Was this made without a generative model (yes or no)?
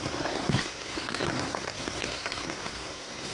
no